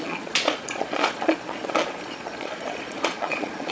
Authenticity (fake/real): fake